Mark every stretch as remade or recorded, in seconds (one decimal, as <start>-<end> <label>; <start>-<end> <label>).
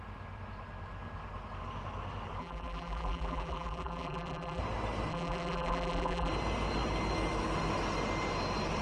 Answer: 0.0-2.4 recorded; 2.4-4.6 remade; 4.6-5.1 recorded; 5.1-6.3 remade; 6.3-8.8 recorded